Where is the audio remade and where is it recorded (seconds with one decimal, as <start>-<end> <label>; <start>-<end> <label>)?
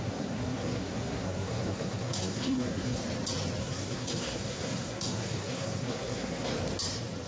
0.0-3.0 remade; 3.0-3.6 recorded; 3.6-6.5 remade; 6.5-7.3 recorded